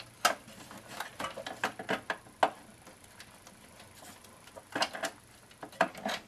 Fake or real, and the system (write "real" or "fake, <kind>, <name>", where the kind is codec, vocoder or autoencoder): real